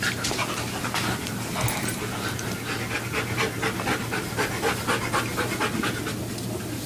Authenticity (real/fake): real